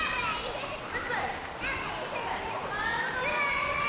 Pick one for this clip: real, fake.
real